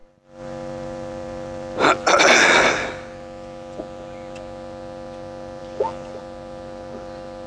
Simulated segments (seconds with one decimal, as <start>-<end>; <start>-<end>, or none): 0.0-2.2; 5.6-6.2